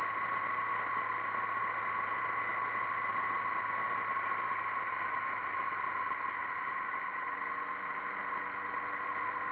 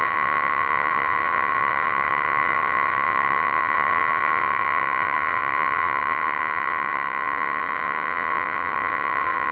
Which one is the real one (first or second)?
first